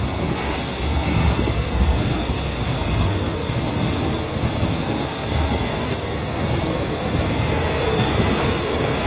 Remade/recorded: remade